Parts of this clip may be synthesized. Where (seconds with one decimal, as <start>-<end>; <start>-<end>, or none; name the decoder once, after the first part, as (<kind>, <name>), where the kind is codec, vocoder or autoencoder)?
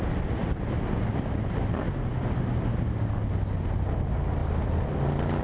none